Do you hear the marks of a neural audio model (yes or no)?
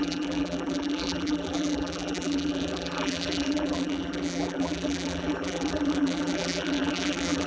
yes